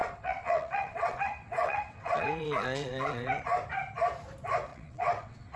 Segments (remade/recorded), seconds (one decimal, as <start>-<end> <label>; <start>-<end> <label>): 0.0-3.4 remade; 3.4-4.7 recorded; 4.7-5.6 remade